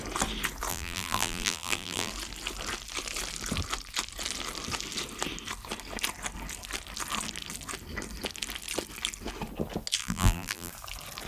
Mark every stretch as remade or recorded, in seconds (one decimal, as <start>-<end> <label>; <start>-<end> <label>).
0.0-0.7 recorded; 0.7-2.1 remade; 2.1-10.0 recorded; 10.0-10.7 remade; 10.7-11.3 recorded